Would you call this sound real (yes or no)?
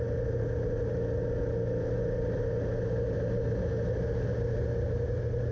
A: yes